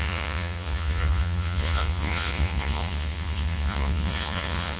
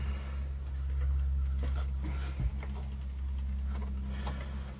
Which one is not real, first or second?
first